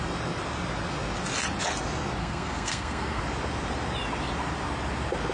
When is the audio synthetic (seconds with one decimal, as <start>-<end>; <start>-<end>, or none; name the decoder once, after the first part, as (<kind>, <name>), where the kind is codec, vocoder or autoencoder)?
2.2-3.2 (codec, SNAC)